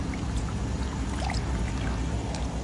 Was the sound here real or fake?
real